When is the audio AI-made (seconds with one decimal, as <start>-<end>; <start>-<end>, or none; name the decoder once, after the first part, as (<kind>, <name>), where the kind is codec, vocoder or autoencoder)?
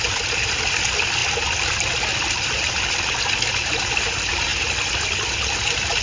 none